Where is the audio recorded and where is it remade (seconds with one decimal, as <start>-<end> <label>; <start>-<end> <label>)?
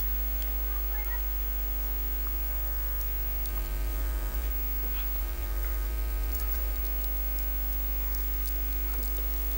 0.0-3.5 recorded; 3.5-4.5 remade; 4.5-5.2 recorded; 5.2-6.8 remade; 6.8-9.6 recorded